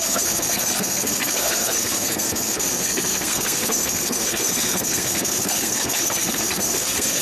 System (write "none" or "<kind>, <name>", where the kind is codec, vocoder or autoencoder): codec, SNAC